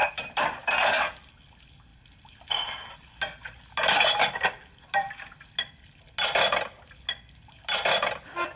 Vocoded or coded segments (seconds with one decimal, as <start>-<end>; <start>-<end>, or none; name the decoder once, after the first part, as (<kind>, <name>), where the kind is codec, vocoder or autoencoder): none